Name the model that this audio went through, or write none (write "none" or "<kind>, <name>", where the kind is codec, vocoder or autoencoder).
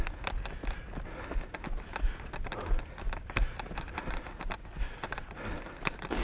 none